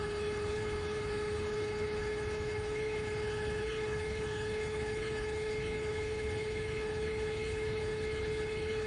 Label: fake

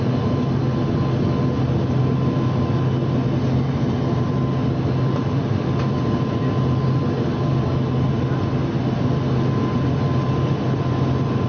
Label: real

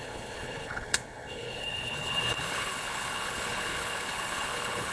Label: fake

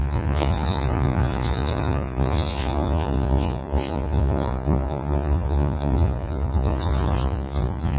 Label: fake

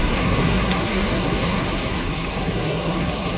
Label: fake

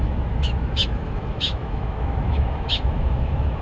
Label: fake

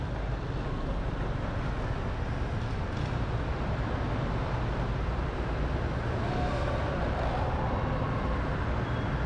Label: real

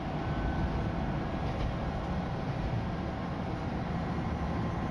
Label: real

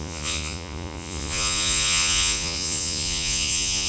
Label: fake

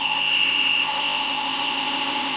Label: fake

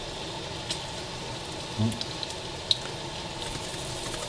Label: real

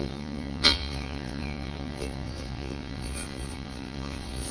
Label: fake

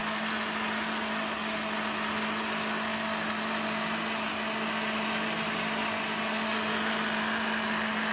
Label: real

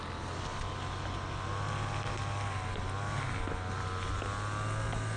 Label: real